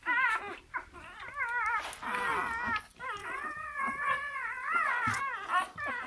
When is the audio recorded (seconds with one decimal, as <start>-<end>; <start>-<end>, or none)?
0.0-3.2; 5.2-6.1